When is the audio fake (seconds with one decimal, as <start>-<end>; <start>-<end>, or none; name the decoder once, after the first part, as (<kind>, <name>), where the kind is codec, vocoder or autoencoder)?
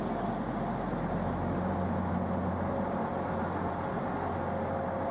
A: none